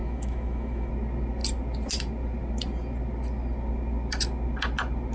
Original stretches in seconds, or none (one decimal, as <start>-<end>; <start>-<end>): 0.9-5.1